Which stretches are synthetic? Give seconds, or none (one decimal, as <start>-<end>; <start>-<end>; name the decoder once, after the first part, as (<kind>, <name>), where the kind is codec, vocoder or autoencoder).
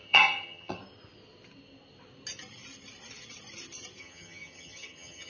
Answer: 0.0-0.8 (vocoder, HiFi-GAN); 4.0-5.3